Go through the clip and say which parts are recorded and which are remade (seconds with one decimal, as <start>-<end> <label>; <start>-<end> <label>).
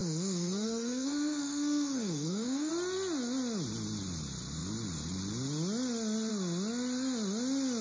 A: 0.0-2.7 remade; 2.7-7.8 recorded